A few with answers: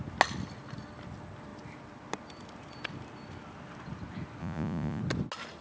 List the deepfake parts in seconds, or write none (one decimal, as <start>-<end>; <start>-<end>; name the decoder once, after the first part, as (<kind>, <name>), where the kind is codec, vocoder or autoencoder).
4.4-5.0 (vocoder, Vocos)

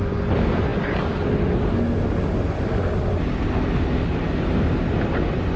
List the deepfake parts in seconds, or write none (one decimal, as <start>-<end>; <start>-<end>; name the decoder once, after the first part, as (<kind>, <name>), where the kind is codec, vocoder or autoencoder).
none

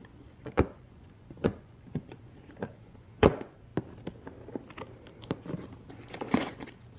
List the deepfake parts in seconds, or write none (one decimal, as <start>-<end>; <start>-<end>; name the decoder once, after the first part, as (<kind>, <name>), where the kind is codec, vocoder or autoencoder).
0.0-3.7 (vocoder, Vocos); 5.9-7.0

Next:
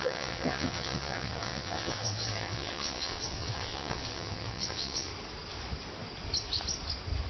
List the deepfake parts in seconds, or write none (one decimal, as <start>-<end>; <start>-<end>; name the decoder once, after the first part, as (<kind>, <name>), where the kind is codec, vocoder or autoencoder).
0.0-5.1 (vocoder, WaveNeXt)